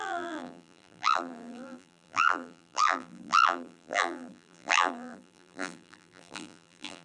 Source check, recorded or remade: remade